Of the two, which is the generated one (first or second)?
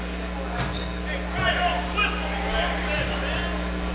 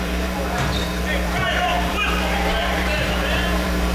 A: second